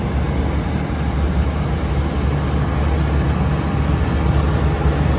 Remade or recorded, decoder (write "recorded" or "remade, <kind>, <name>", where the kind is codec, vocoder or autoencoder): recorded